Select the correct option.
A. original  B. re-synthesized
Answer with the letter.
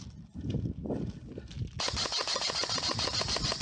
A